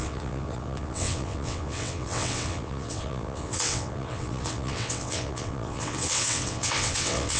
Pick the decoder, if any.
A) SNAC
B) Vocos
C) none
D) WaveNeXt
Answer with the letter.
D